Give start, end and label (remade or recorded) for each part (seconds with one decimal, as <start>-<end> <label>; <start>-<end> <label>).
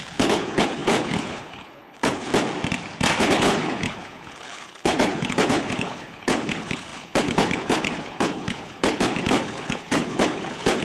0.0-2.3 remade; 2.3-3.2 recorded; 3.2-10.8 remade